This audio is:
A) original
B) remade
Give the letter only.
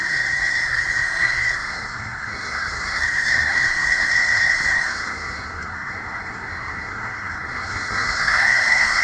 B